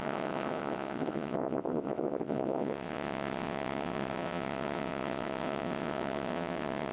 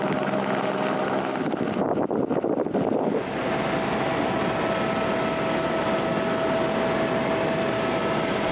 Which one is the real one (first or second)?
second